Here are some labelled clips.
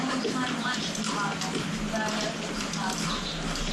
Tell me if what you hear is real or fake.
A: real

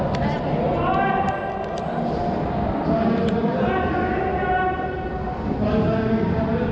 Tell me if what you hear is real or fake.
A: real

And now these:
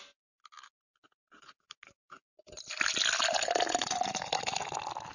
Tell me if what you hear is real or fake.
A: real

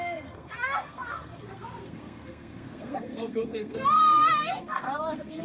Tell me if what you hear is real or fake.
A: fake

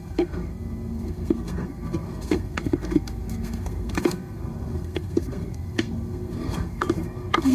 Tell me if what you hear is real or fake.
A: fake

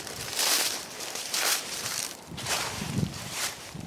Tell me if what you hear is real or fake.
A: fake